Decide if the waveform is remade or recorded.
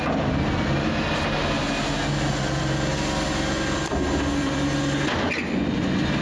recorded